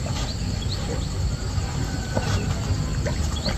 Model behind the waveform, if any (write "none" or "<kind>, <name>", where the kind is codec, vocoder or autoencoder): none